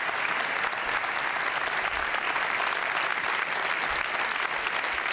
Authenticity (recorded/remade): recorded